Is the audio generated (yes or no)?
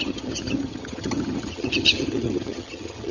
yes